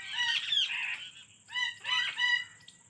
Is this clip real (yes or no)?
yes